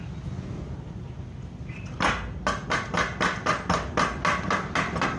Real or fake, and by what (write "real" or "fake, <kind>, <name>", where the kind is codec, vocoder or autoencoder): real